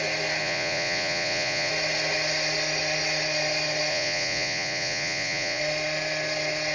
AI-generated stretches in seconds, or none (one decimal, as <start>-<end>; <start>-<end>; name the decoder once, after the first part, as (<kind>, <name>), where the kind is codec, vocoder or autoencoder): 0.4-1.7 (vocoder, Vocos); 3.9-5.6